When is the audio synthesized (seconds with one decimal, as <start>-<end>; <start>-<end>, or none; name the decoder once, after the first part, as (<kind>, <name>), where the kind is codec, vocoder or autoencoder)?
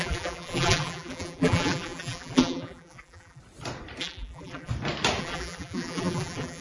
0.0-3.4 (vocoder, BigVGAN v2); 4.0-4.7; 5.2-6.6